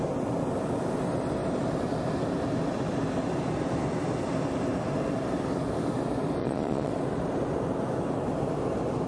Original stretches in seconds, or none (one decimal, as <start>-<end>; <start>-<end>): 0.0-6.4; 6.9-9.1